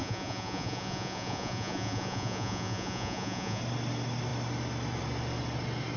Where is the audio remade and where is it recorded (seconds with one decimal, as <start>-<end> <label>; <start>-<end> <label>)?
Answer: 0.0-3.6 remade; 3.6-6.0 recorded